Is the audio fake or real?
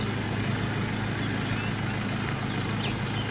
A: real